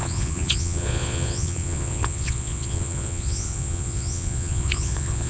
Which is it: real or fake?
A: fake